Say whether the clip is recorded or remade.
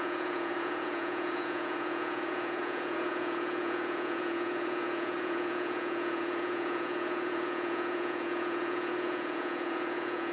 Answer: remade